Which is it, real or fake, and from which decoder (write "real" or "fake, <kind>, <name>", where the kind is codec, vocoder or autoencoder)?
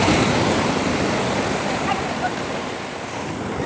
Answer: real